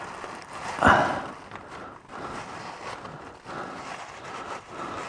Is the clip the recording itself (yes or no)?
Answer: yes